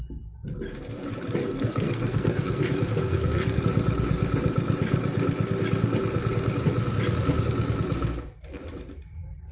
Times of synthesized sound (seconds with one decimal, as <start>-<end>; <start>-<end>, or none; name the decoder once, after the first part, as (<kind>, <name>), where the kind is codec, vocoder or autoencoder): 1.4-3.6 (codec, SNAC)